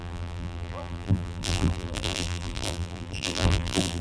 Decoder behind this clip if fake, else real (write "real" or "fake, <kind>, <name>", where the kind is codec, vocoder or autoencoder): fake, vocoder, BigVGAN v2